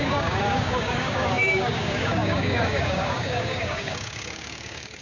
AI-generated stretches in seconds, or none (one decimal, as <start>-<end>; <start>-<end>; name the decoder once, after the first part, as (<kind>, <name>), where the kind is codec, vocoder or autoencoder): 0.0-5.0 (codec, DAC)